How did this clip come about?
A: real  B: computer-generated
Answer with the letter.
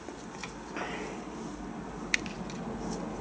A